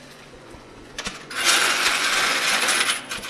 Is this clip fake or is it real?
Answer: fake